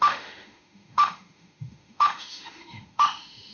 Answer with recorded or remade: remade